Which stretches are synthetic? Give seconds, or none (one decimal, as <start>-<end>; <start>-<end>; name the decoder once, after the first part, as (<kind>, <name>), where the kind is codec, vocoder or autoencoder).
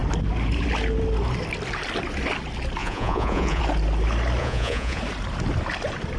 2.8-3.6 (vocoder, Vocos); 4.4-5.0